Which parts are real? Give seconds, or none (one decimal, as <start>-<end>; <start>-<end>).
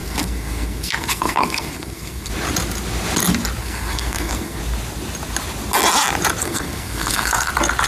2.3-3.6; 4.6-6.4; 7.5-7.9